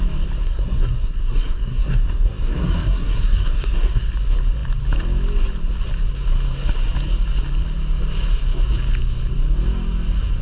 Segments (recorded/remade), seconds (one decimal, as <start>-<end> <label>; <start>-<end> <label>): 0.0-0.4 recorded; 0.4-4.1 remade; 4.1-10.4 recorded